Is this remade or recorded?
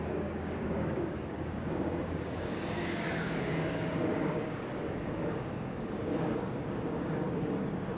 remade